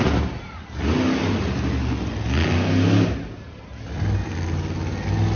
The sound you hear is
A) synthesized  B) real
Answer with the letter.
B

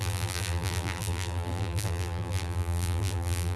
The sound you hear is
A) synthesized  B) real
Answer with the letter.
A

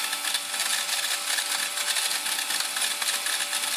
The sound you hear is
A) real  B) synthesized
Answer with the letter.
A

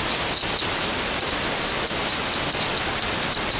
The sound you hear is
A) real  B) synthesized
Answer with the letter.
A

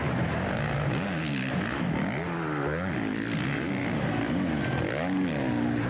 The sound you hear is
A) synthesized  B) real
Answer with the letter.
B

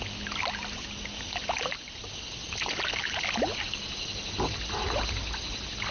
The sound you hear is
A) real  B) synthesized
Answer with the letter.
A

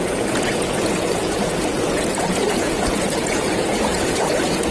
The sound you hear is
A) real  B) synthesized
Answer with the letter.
B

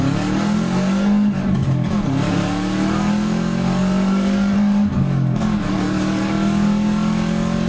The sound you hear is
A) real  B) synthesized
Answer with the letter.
B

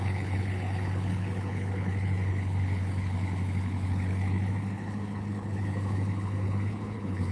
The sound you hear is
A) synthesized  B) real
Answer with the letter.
A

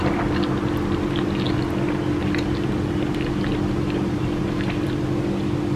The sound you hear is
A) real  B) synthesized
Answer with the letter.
A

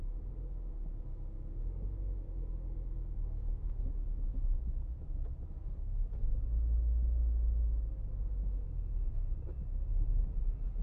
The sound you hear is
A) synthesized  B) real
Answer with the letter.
B